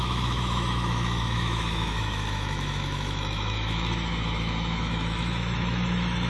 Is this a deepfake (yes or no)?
yes